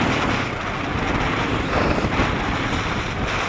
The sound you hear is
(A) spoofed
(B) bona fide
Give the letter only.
B